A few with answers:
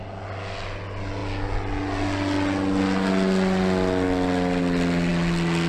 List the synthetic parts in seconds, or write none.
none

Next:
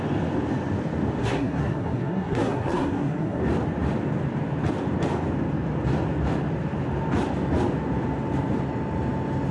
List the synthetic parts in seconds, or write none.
1.2-3.4 (codec, SNAC)

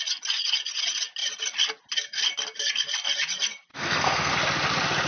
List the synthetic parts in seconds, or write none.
3.7-4.3 (codec, SNAC)

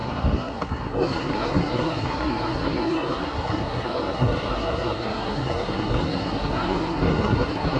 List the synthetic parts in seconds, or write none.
0.0-7.8 (codec, SNAC)

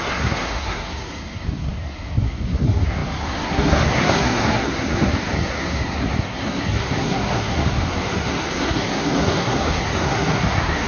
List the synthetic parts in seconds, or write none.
0.0-10.9 (codec, SNAC)

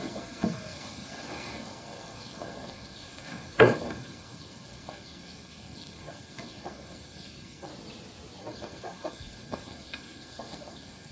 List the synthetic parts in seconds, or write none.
0.0-7.7 (codec, SNAC); 8.4-11.1